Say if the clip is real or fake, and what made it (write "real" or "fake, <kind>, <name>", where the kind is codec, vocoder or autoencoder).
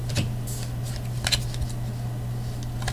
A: real